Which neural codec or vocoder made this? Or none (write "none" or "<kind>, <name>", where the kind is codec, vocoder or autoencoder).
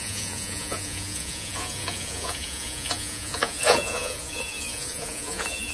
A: vocoder, Vocos